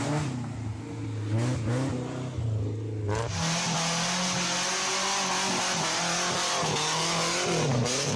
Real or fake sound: real